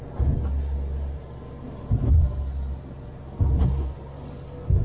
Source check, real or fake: real